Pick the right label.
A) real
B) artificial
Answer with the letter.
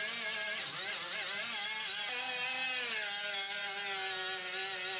A